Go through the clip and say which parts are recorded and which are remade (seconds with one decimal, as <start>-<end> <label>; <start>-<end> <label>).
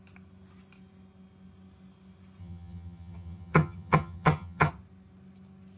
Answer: 0.0-2.4 recorded; 2.4-4.7 remade; 4.7-5.8 recorded